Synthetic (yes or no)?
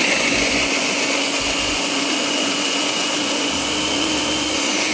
yes